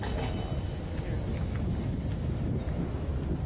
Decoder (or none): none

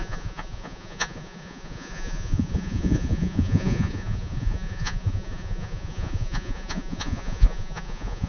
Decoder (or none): vocoder, Vocos